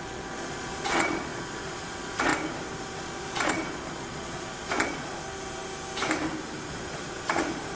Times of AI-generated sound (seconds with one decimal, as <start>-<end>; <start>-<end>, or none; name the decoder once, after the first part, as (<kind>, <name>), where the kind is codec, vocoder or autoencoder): 0.0-2.3 (vocoder, Vocos); 3.0-5.2; 6.7-7.8